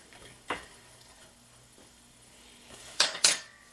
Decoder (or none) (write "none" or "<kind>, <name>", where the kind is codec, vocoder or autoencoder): codec, DAC